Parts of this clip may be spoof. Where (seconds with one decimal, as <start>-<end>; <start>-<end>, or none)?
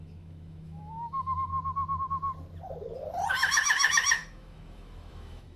0.0-1.5; 3.3-5.6